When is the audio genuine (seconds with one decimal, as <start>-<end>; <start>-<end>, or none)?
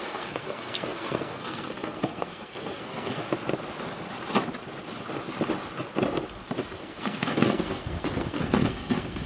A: 3.2-6.8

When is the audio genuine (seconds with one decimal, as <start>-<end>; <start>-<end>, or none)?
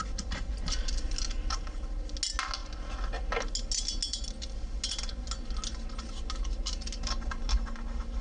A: 0.0-8.2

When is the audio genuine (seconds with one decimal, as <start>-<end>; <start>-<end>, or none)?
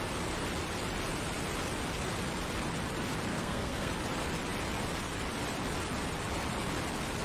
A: 0.0-3.3; 3.9-7.2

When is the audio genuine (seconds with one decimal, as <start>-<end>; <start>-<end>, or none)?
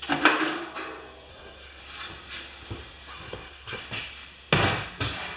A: 0.0-1.3; 1.8-3.1; 3.8-5.4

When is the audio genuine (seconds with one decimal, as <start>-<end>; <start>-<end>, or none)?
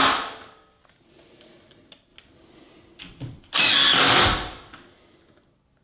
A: 0.0-5.8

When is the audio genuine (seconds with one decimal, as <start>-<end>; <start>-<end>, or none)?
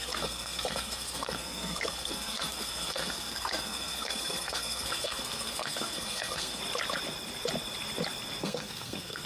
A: 6.6-8.4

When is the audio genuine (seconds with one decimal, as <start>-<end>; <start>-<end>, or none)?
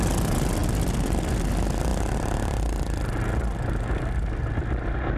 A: 0.0-5.2